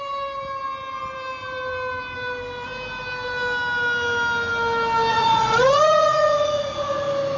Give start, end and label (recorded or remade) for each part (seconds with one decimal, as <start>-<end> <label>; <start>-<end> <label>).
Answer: 0.0-5.1 recorded; 5.1-7.0 remade; 7.0-7.4 recorded